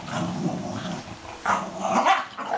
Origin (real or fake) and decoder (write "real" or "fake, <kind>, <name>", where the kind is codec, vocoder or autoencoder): real